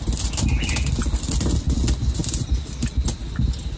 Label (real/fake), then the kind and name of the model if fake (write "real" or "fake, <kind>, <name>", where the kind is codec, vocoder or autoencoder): real